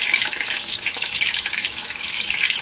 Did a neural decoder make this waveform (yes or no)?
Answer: yes